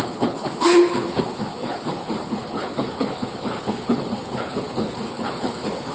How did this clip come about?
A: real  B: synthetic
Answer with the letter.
B